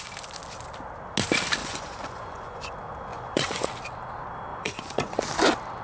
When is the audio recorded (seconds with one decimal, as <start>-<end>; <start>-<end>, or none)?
0.0-1.6; 2.7-3.1; 3.7-4.5; 5.2-5.8